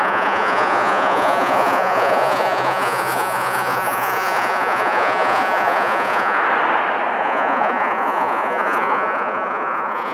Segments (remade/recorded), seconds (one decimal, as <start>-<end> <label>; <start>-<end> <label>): 0.0-6.4 remade; 6.4-7.2 recorded; 7.2-10.1 remade